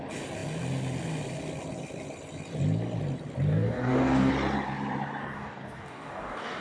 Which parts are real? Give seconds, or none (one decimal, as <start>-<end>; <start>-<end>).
0.0-3.5; 4.3-5.2